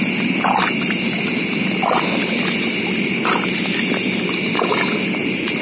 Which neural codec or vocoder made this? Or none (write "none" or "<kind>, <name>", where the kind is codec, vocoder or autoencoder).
none